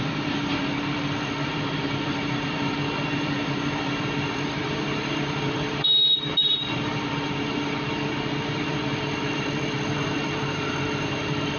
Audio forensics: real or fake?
fake